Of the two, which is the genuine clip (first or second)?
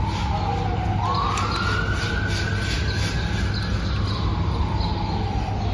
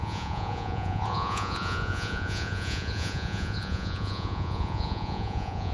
first